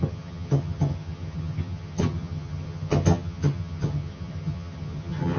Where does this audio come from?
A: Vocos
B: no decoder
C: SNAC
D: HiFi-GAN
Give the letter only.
D